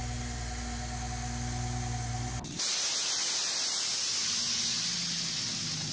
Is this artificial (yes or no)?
no